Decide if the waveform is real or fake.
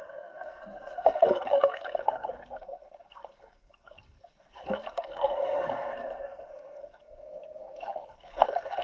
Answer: fake